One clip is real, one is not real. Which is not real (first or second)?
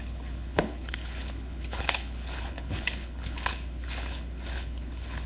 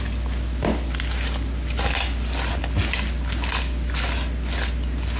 first